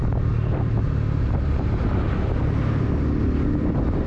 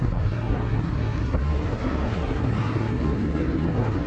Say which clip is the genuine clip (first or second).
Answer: first